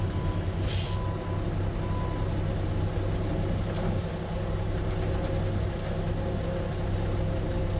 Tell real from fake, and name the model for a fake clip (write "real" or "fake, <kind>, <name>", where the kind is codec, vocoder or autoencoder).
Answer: real